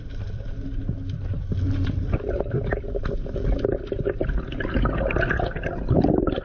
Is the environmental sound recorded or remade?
recorded